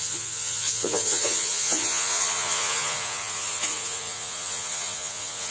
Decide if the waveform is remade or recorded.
remade